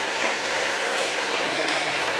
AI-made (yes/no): yes